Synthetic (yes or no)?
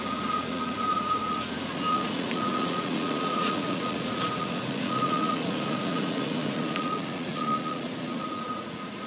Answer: yes